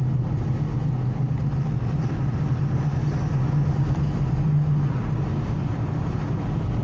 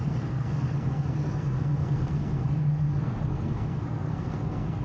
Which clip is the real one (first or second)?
first